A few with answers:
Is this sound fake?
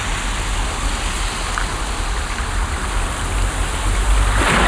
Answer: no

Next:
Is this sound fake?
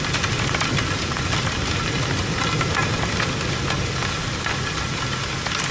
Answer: no